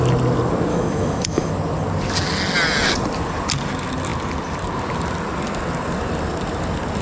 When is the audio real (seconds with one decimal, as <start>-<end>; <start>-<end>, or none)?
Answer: 0.0-0.7; 1.5-7.0